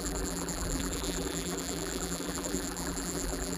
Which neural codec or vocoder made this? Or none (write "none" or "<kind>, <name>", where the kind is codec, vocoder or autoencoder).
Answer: vocoder, BigVGAN v2